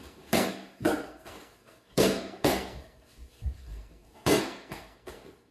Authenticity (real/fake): fake